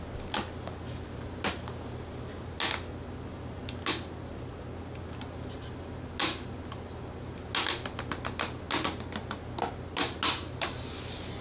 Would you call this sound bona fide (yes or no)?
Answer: yes